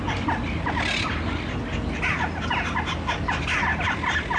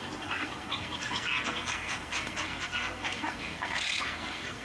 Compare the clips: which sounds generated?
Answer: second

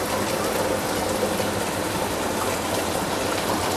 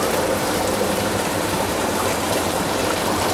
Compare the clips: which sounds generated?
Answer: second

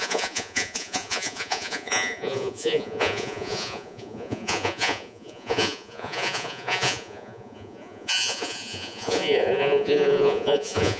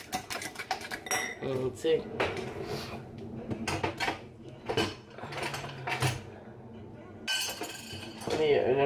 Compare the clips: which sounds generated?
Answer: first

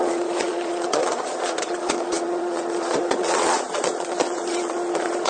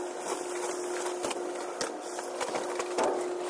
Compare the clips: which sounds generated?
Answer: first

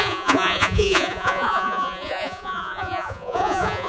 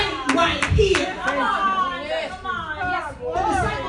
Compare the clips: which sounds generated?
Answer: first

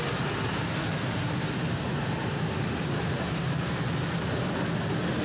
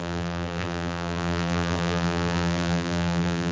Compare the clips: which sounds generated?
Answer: second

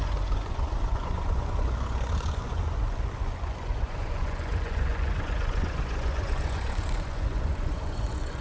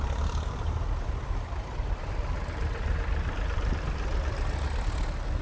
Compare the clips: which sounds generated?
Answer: first